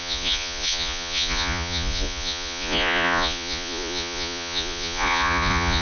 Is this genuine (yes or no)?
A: no